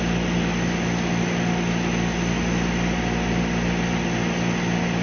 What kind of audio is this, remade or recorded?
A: recorded